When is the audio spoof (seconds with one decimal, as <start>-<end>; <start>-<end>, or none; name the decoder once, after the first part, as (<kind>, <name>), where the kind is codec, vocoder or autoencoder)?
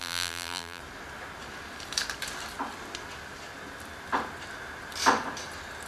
0.0-0.8 (vocoder, BigVGAN v2)